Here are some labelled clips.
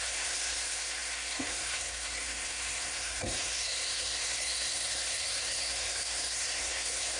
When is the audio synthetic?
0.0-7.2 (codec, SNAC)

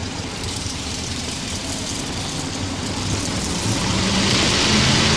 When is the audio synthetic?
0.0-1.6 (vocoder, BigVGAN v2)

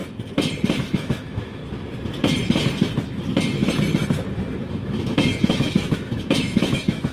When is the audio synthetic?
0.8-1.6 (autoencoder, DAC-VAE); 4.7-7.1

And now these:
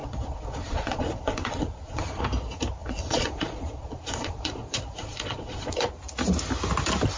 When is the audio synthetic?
0.0-2.2 (vocoder, Vocos); 2.8-5.9

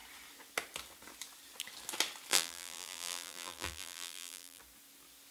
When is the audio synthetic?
2.3-4.6 (vocoder, BigVGAN v2)